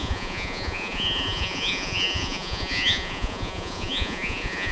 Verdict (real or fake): fake